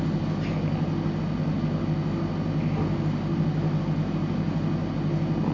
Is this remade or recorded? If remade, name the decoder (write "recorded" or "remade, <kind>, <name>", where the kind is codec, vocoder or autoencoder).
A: recorded